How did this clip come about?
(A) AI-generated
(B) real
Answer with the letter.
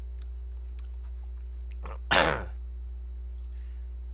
B